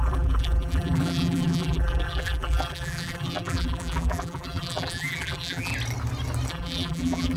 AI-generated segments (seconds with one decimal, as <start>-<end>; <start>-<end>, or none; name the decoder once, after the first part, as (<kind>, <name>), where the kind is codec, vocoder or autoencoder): 0.0-5.7 (vocoder, BigVGAN v2); 6.5-7.4